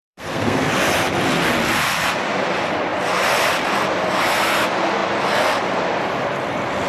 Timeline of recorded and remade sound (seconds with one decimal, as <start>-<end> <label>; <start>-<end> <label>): 0.0-0.7 remade; 0.7-6.9 recorded